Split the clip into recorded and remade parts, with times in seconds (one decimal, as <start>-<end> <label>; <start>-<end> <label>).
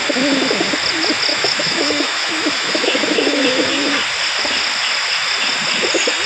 0.0-1.3 recorded; 1.3-3.9 remade; 3.9-6.3 recorded